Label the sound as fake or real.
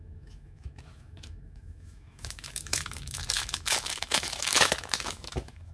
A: fake